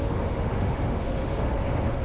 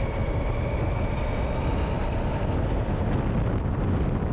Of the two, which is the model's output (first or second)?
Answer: first